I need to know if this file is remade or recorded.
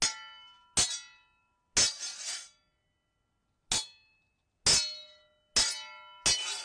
recorded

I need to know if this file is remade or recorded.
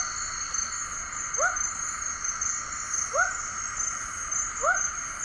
recorded